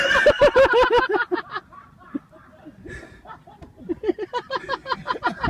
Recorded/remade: recorded